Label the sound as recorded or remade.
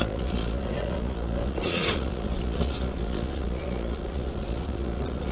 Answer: remade